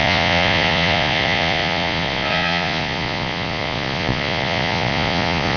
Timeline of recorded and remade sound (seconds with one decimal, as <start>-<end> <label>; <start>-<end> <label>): 0.0-5.6 remade